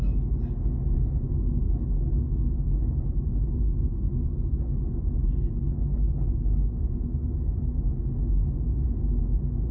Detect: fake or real real